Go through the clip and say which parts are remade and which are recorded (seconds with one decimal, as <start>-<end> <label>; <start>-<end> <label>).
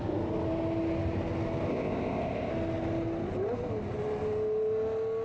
0.0-1.7 recorded; 1.7-2.5 remade; 2.5-5.2 recorded